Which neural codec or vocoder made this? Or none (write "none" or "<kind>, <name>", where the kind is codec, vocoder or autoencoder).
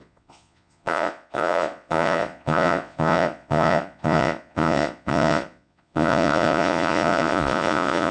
vocoder, Vocos